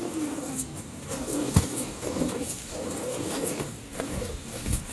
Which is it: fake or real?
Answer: fake